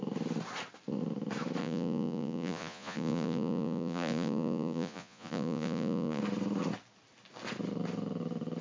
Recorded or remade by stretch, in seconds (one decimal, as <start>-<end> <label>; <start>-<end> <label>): 0.0-1.6 recorded; 1.6-6.2 remade; 6.2-8.6 recorded